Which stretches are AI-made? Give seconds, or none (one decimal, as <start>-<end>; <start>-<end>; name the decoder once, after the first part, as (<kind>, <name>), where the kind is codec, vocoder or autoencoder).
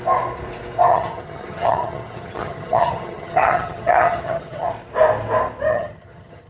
0.9-4.7 (vocoder, HiFi-GAN); 5.7-6.5